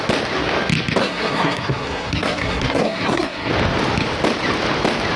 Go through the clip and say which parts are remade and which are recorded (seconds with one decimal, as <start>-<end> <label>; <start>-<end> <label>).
0.0-1.0 recorded; 1.0-3.5 remade; 3.5-5.2 recorded